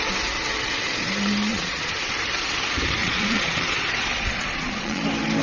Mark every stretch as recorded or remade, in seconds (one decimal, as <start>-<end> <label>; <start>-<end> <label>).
0.0-1.5 recorded; 1.5-2.1 remade; 2.1-3.0 recorded; 3.0-5.0 remade; 5.0-5.4 recorded